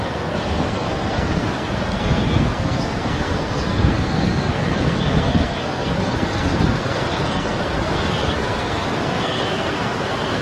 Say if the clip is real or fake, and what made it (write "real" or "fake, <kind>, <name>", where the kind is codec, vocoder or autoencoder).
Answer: fake, codec, SNAC